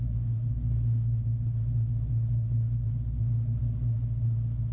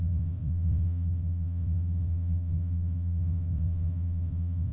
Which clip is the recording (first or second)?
first